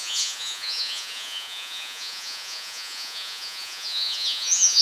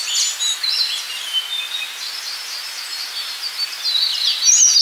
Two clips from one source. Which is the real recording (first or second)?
second